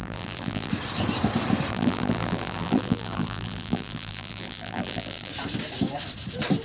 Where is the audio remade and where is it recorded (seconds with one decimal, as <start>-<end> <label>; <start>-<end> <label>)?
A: 0.0-0.7 remade; 0.7-1.7 recorded; 1.7-5.3 remade; 5.3-6.6 recorded